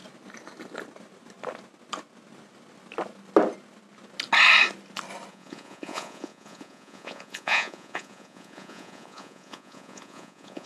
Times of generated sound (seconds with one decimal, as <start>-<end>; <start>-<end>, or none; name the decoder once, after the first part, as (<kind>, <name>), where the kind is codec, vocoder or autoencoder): 5.3-10.7 (vocoder, Vocos)